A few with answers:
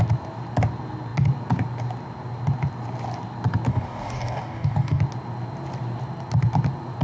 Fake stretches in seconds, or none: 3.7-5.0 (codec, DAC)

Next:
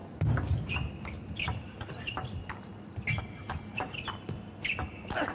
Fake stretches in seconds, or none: none

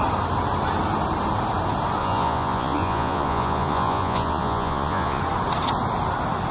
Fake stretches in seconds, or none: 2.0-5.2 (vocoder, Vocos)

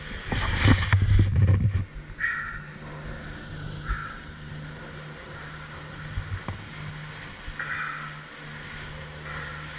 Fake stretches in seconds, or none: 4.0-4.5 (vocoder, BigVGAN v2)

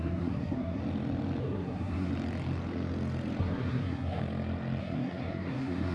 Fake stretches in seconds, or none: 0.0-0.8 (codec, SNAC); 1.4-2.1; 3.4-4.2; 4.8-5.9

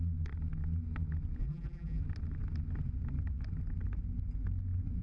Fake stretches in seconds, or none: 1.4-2.0 (vocoder, BigVGAN v2)

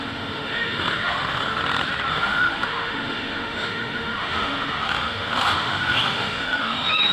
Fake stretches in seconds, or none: 0.0-1.6 (autoencoder, DAC-VAE); 2.1-7.1